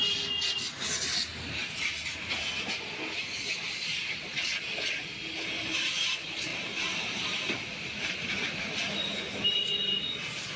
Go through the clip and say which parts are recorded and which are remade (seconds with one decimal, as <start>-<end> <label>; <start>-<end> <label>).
0.0-1.6 recorded; 1.6-2.8 remade; 2.8-5.6 recorded; 5.6-6.1 remade; 6.1-6.5 recorded; 6.5-8.9 remade; 8.9-10.6 recorded